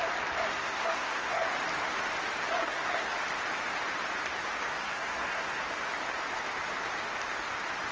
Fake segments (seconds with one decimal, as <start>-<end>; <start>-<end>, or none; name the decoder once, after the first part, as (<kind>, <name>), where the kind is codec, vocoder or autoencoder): 0.5-1.5 (codec, SNAC); 2.6-3.1; 4.8-5.6